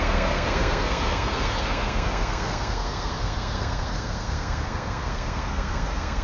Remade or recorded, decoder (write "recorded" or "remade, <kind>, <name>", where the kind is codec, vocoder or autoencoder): remade, codec, SNAC